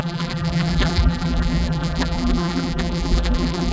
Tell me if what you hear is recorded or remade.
remade